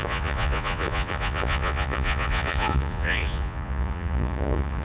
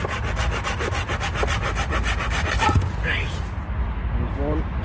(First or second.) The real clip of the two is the second